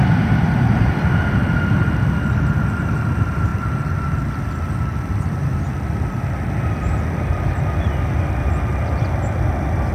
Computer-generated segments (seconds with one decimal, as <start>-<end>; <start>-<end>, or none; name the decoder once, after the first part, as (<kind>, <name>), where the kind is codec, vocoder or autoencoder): none